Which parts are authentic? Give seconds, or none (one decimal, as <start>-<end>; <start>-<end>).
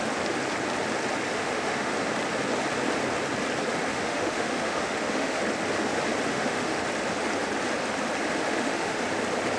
0.0-1.3; 1.9-3.9; 5.4-6.3; 6.8-8.4; 9.0-9.6